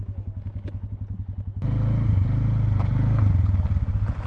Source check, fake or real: real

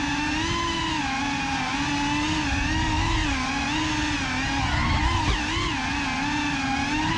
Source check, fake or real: real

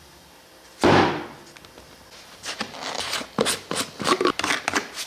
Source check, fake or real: real